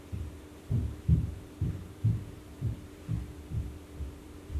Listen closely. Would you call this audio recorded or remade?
remade